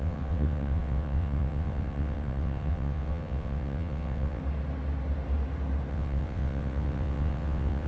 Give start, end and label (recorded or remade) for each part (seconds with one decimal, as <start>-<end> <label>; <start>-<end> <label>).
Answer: 0.0-4.4 remade; 4.4-5.9 recorded; 5.9-7.9 remade